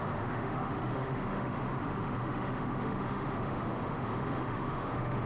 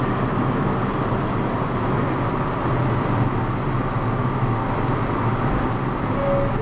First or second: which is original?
second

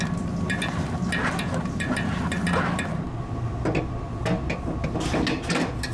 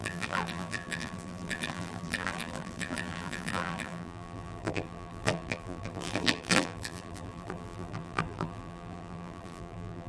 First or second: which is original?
first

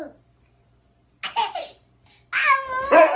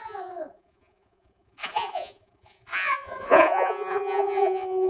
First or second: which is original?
first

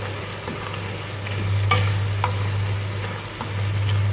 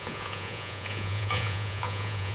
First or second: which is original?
first